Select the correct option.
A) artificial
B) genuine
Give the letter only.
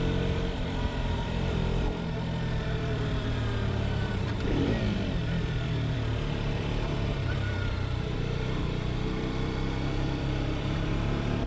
A